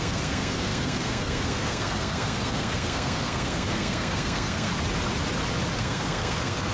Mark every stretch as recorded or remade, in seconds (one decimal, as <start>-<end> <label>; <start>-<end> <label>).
0.0-4.7 remade; 4.7-5.8 recorded; 5.8-6.7 remade